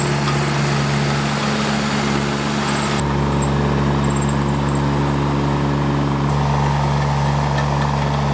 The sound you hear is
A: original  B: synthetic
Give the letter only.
A